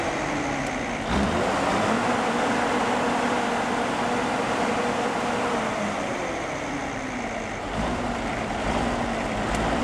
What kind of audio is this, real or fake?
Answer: fake